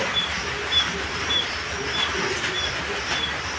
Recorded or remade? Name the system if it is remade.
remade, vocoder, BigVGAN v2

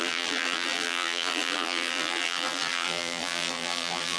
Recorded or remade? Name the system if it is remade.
remade, vocoder, BigVGAN v2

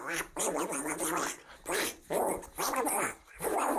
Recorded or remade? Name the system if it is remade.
remade, vocoder, BigVGAN v2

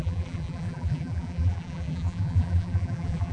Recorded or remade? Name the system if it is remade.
remade, vocoder, BigVGAN v2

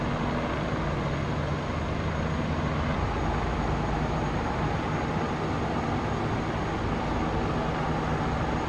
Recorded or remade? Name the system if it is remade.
recorded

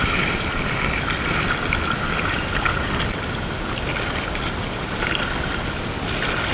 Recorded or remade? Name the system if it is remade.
recorded